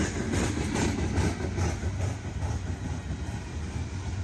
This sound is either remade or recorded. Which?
recorded